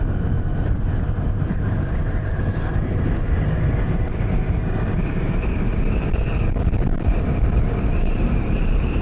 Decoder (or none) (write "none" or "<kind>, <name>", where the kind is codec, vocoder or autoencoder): vocoder, BigVGAN v2